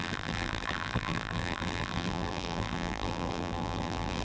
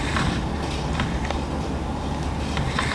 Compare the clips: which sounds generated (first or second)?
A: first